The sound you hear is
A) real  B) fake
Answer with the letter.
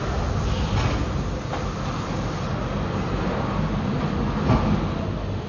A